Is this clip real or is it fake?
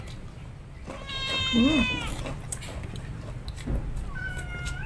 real